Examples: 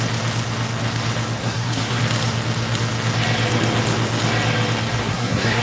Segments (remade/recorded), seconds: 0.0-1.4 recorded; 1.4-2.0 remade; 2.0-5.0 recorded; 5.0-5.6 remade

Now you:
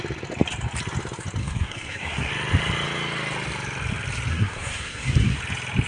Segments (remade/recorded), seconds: 0.0-1.4 recorded; 1.4-2.3 remade; 2.3-4.3 recorded; 4.3-5.4 remade; 5.4-5.9 recorded

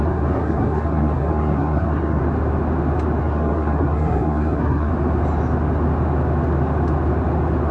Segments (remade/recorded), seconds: 0.0-2.2 remade; 2.2-3.2 recorded; 3.2-4.9 remade; 4.9-7.7 recorded

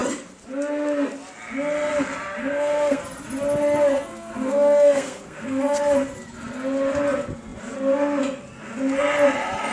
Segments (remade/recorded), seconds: 0.0-2.4 recorded; 2.4-3.0 remade; 3.0-3.9 recorded; 3.9-5.8 remade; 5.8-9.7 recorded

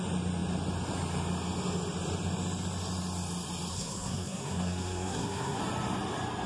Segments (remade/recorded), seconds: 0.0-3.7 recorded; 3.7-5.6 remade; 5.6-6.5 recorded

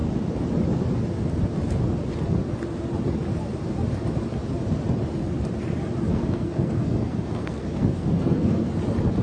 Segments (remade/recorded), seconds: 0.0-6.1 recorded; 6.1-8.7 remade; 8.7-9.2 recorded